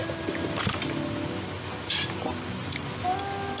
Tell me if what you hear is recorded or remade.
recorded